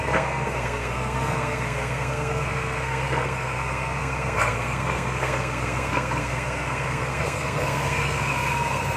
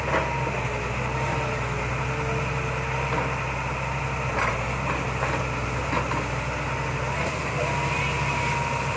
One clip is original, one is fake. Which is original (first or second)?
second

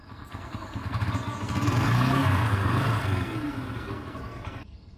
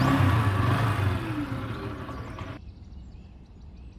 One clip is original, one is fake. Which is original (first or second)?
second